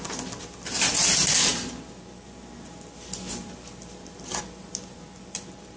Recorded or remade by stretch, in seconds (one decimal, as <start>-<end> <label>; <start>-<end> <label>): 0.0-5.8 recorded